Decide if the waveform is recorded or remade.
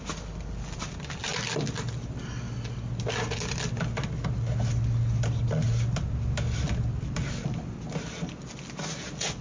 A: recorded